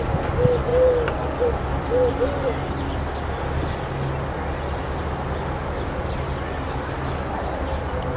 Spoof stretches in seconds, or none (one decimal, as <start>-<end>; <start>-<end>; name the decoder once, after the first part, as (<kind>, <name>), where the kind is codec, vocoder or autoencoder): none